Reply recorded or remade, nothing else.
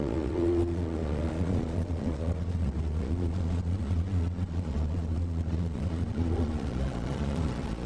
remade